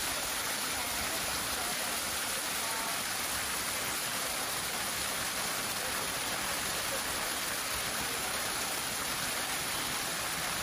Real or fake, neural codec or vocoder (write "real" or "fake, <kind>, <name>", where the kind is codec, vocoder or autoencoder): fake, vocoder, BigVGAN v2